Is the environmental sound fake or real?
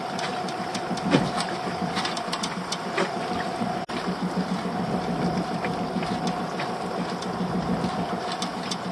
real